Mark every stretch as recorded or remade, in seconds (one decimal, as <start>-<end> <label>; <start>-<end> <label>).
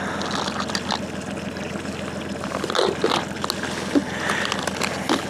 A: 0.0-5.3 recorded